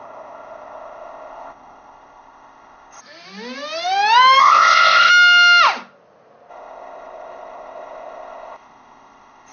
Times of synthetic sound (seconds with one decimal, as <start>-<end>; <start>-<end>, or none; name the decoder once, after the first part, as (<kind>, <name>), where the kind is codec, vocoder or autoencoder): 0.0-3.0 (codec, ZipCodec); 4.4-5.1; 6.5-9.5

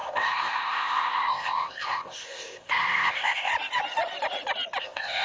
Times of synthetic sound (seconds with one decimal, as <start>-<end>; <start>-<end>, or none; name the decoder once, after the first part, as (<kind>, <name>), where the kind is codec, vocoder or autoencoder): 0.0-3.5 (codec, ZipCodec); 4.8-5.2